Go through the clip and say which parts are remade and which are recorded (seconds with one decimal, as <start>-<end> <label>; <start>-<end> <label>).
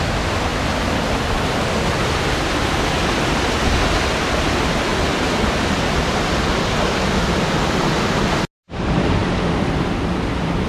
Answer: 0.0-4.9 recorded; 4.9-8.4 remade; 8.4-10.7 recorded